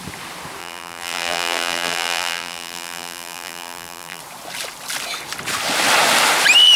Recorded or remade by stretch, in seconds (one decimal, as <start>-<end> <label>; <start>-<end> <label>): 0.0-0.6 recorded; 0.6-4.2 remade; 4.2-6.8 recorded